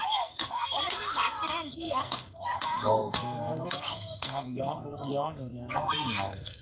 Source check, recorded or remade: remade